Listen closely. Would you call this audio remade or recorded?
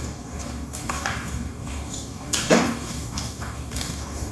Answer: remade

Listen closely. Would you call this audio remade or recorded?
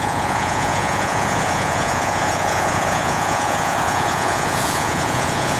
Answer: remade